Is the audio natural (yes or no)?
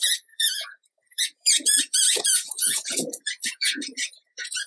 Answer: no